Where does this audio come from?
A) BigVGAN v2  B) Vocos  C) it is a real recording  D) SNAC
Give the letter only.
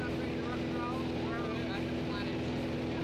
C